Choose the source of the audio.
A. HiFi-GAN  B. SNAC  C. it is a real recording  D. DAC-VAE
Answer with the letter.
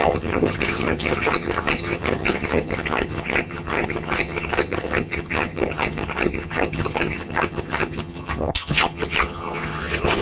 A